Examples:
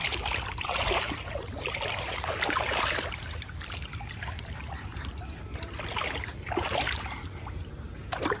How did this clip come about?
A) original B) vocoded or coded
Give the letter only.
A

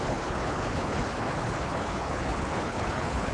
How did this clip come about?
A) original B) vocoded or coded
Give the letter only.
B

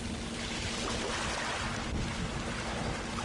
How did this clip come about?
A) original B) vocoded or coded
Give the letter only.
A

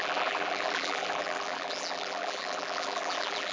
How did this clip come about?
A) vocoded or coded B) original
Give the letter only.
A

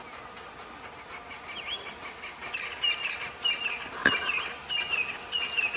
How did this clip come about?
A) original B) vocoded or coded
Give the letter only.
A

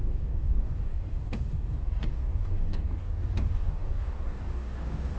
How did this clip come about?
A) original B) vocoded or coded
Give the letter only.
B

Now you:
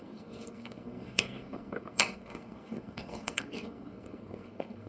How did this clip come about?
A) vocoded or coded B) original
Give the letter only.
A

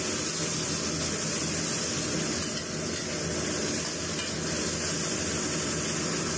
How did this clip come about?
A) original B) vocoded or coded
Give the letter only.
A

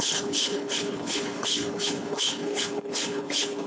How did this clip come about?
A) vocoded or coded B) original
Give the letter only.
A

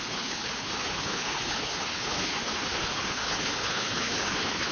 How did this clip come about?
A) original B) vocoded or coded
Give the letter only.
B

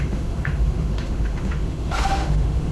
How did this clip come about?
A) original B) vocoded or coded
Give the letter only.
B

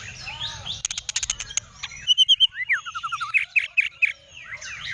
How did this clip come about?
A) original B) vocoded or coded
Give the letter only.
A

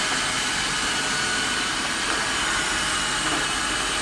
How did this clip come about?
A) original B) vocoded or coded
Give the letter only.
A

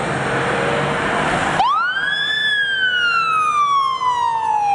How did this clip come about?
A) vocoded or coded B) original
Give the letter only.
B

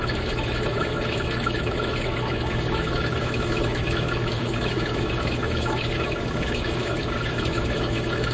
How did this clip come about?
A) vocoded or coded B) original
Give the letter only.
A